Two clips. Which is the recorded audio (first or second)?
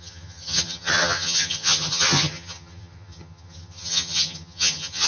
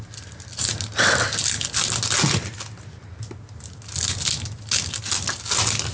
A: second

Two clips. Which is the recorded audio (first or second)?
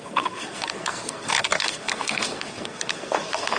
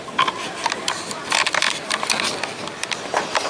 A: second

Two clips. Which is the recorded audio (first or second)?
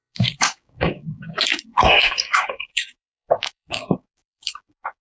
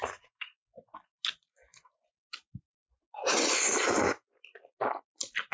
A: second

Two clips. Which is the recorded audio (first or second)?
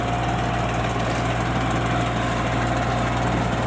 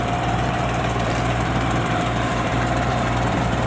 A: first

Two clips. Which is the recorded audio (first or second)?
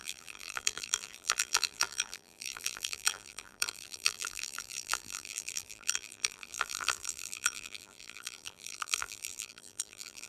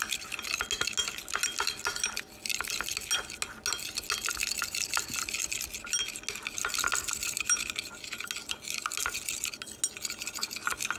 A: second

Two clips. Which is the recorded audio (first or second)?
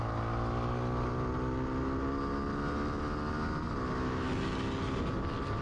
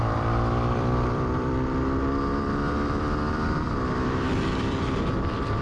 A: first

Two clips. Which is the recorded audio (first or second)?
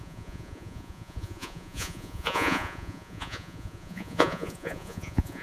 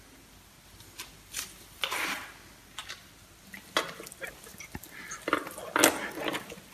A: second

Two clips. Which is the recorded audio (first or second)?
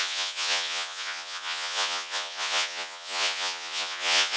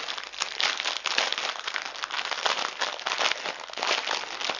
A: second